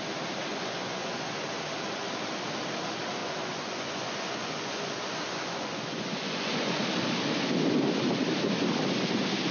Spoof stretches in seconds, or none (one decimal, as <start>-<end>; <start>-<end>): 0.5-1.3; 3.2-6.8